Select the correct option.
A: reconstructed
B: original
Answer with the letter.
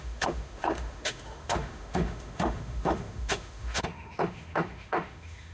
A